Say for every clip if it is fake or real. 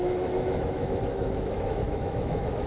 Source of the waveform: fake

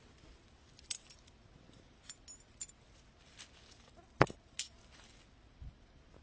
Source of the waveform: real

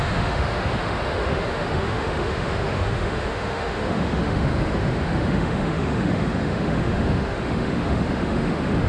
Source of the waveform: fake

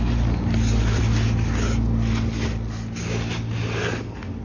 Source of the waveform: real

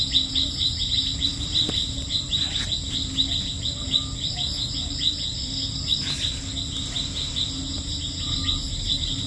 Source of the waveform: real